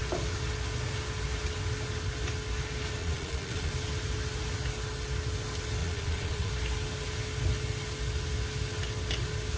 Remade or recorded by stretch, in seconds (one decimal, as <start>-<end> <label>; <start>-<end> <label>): 0.0-3.0 recorded; 3.0-3.7 remade; 3.7-5.8 recorded; 5.8-6.5 remade; 6.5-9.6 recorded

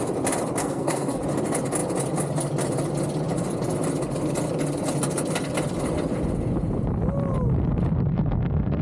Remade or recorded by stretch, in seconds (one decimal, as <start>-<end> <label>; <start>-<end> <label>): 0.0-0.6 recorded; 0.6-1.2 remade; 1.2-8.1 recorded; 8.1-8.8 remade

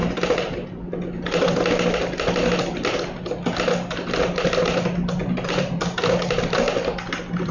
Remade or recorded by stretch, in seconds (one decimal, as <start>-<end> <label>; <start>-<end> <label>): 0.0-0.7 remade; 0.7-5.2 recorded; 5.2-5.8 remade; 5.8-7.5 recorded